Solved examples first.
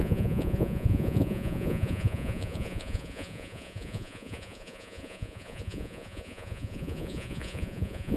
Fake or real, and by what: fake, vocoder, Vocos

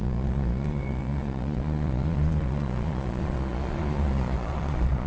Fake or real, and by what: fake, vocoder, Vocos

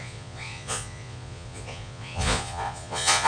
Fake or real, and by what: fake, vocoder, Vocos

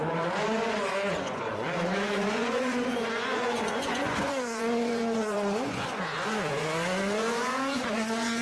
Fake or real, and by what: fake, vocoder, Vocos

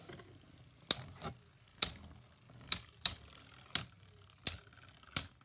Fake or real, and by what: real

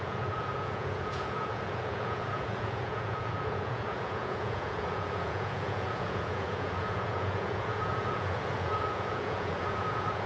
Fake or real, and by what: fake, vocoder, Vocos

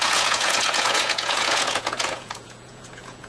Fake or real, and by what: fake, vocoder, Vocos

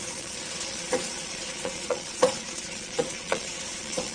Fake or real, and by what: fake, vocoder, Vocos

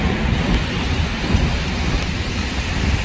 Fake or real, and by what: real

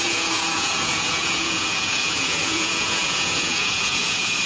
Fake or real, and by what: fake, vocoder, Vocos